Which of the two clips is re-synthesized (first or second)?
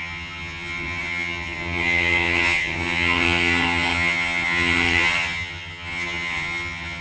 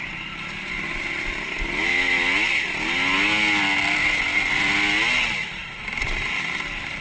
first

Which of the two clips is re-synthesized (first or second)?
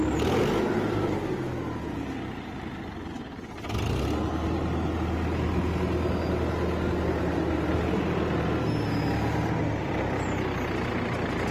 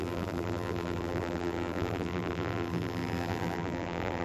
second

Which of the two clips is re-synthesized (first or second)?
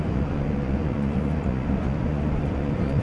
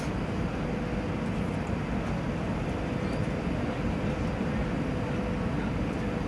first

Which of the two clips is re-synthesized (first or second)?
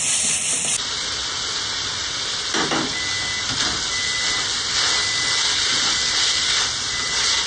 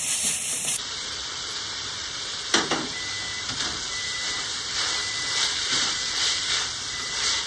second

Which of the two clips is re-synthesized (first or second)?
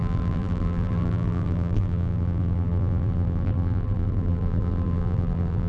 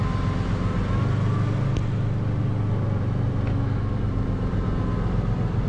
first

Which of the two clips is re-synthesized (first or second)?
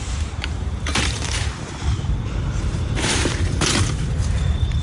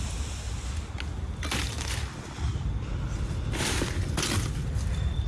first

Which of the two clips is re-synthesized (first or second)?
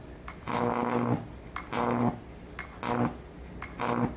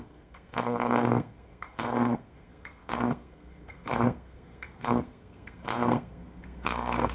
second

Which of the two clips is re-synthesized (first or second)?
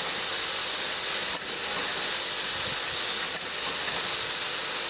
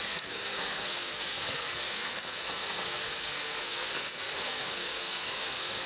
second